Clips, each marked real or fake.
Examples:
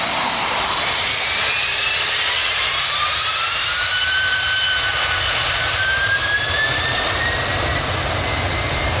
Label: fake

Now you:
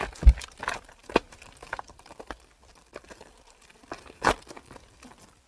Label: fake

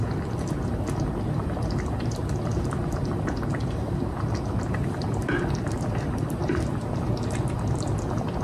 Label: real